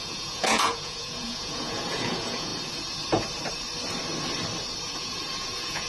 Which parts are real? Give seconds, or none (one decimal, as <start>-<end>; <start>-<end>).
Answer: 2.5-4.8